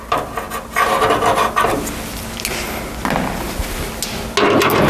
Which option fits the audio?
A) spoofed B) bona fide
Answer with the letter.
B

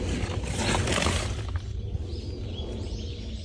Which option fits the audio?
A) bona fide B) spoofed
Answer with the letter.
A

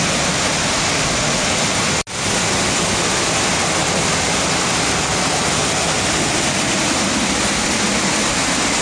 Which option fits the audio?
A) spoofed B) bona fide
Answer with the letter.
B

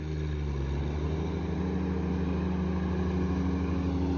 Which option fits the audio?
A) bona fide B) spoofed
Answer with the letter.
A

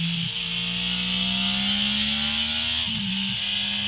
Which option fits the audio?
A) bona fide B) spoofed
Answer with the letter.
A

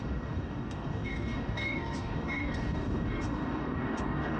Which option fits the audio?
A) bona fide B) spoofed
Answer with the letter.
B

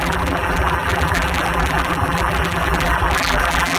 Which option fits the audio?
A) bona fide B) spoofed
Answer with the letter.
B